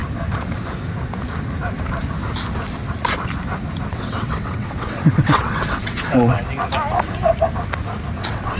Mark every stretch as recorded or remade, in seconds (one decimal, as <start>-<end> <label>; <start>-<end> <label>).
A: 0.0-3.9 recorded; 3.9-6.4 remade; 6.4-8.2 recorded; 8.2-8.6 remade